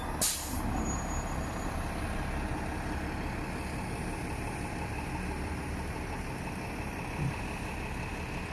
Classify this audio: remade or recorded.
recorded